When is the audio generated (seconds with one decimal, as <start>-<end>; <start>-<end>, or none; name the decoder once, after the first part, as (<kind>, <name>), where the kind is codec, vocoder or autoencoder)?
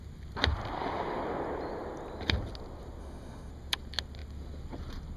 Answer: 3.0-3.5 (autoencoder, DAC-VAE)